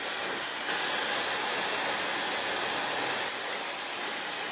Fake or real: real